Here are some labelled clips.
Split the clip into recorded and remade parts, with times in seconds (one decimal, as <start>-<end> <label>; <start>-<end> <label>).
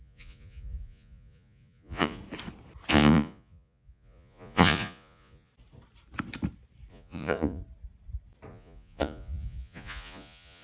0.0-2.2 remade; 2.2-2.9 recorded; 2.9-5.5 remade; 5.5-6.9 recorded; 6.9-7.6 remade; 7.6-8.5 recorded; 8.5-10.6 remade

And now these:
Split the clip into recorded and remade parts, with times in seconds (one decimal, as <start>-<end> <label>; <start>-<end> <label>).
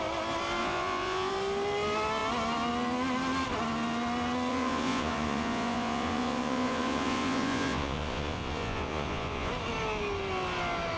0.0-0.6 recorded; 0.6-1.3 remade; 1.3-4.5 recorded; 4.5-9.5 remade; 9.5-11.0 recorded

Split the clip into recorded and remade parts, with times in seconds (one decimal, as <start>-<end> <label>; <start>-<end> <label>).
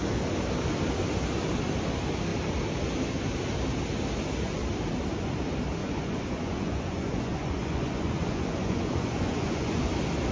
0.0-5.8 recorded; 5.8-9.8 remade; 9.8-10.3 recorded